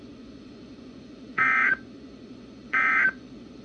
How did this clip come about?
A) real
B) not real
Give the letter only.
B